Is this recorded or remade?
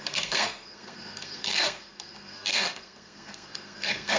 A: remade